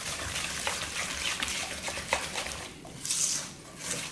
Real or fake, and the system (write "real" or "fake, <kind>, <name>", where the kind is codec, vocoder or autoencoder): real